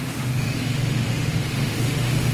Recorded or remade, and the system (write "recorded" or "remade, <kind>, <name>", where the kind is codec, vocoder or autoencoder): remade, autoencoder, DAC-VAE